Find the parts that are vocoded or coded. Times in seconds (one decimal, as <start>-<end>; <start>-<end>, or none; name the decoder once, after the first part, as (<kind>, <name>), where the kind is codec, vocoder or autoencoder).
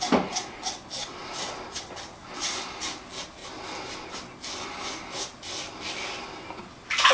none